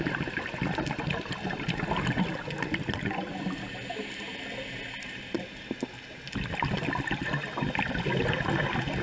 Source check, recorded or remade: recorded